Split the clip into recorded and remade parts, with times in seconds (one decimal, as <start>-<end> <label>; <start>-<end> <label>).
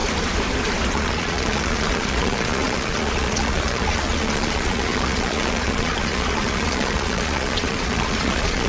0.0-0.9 recorded; 0.9-8.7 remade